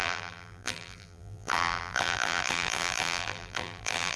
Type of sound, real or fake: fake